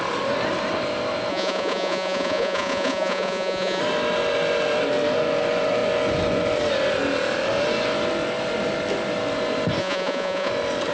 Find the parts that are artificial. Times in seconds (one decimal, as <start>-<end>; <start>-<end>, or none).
1.3-3.8; 9.8-10.5